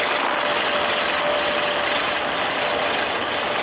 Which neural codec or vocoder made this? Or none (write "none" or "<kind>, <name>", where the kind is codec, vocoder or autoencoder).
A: none